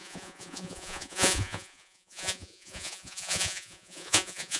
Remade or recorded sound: remade